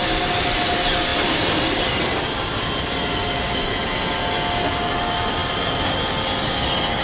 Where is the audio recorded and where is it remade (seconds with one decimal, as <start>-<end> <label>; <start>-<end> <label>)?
0.0-7.0 recorded